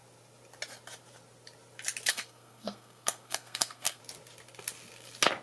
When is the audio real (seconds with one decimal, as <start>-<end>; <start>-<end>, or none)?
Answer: 0.0-2.1; 4.0-5.4